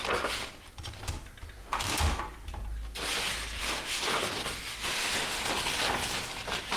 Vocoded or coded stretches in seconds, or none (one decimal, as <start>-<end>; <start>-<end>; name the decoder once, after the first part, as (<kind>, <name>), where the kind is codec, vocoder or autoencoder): 1.6-2.2 (autoencoder, DAC-VAE); 3.6-4.2; 4.7-5.4